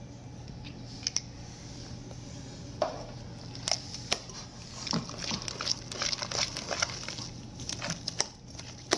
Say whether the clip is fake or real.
real